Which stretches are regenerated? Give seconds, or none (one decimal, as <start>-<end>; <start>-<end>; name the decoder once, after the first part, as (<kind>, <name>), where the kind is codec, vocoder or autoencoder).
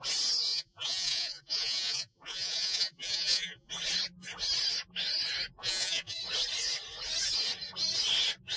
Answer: 0.5-3.7 (vocoder, Vocos); 5.6-6.2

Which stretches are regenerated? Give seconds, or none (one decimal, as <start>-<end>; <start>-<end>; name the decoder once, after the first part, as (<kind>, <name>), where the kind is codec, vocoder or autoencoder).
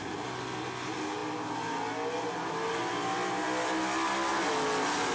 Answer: none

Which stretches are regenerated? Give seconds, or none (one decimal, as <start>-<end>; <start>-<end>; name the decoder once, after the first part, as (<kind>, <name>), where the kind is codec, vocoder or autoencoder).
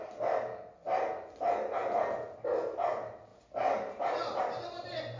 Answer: none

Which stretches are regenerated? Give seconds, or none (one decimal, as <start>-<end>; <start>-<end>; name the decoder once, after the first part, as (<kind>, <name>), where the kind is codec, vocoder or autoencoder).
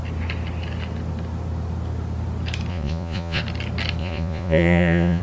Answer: 2.7-3.4 (vocoder, Vocos); 4.0-5.2